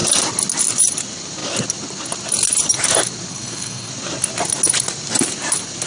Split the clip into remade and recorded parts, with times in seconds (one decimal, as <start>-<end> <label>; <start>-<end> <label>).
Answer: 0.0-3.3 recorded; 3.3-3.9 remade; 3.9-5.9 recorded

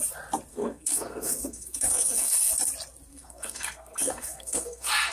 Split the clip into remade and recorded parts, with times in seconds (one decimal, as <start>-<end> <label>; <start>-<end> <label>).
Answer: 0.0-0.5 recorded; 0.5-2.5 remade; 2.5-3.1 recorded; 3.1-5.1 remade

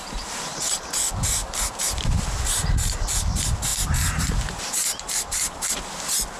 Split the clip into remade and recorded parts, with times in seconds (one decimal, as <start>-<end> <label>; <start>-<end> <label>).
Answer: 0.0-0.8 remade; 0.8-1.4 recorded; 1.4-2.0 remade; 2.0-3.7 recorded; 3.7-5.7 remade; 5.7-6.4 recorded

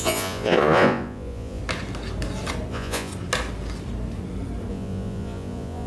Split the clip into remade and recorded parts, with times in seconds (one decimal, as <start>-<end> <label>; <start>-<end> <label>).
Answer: 0.0-1.6 remade; 1.6-2.7 recorded; 2.7-3.1 remade; 3.1-4.7 recorded; 4.7-5.9 remade

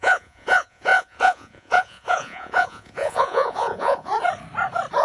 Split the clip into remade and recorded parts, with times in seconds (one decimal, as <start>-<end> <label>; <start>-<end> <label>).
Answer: 0.0-4.1 remade; 4.1-5.0 recorded